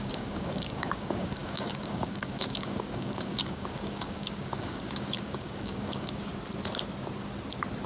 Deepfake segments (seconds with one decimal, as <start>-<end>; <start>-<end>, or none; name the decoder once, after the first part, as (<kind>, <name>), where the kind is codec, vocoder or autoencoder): 0.0-6.3 (codec, DAC)